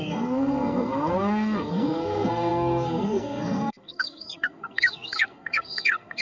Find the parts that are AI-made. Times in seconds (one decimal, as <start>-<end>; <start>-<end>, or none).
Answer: 0.0-6.2